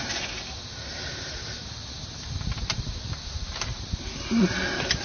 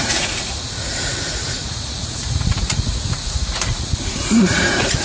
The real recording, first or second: first